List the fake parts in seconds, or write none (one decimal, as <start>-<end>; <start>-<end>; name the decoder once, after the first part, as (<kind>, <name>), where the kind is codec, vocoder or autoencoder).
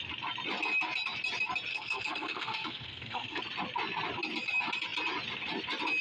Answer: 1.7-3.4 (codec, SNAC)